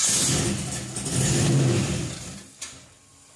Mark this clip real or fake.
real